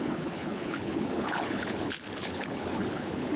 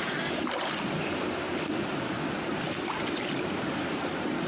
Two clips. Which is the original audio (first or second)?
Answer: second